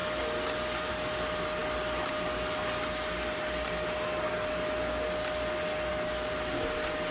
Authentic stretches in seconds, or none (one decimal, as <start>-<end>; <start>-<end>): 0.0-7.1